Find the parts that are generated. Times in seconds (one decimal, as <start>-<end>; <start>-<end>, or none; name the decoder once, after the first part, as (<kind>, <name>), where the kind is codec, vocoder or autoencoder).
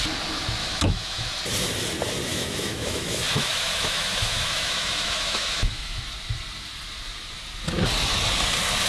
0.6-1.3 (autoencoder, DAC-VAE); 2.3-6.0